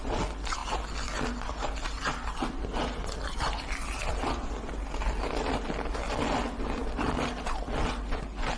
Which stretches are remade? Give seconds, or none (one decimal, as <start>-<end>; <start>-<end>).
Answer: none